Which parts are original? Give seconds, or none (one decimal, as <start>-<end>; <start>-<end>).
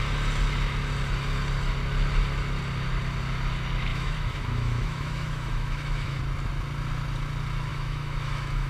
0.0-3.9; 6.2-7.7